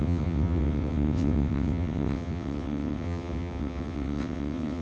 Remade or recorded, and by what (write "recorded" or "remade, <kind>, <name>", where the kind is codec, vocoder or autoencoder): remade, vocoder, WaveNeXt